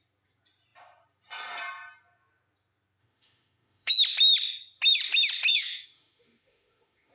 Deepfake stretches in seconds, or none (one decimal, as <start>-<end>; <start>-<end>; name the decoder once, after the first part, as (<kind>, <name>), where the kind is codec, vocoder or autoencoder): 3.0-3.9 (autoencoder, DAC-VAE); 5.5-7.1